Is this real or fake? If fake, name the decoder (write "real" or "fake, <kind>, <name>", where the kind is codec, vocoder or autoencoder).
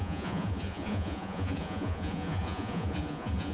fake, vocoder, Vocos